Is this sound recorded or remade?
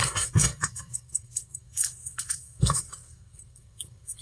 remade